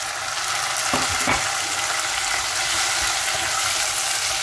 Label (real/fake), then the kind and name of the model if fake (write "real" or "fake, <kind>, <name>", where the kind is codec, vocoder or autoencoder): real